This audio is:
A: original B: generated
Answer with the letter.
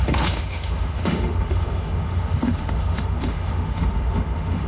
B